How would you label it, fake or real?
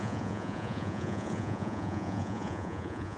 fake